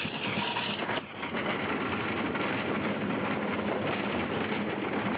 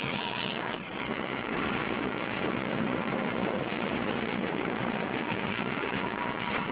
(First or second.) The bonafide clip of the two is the first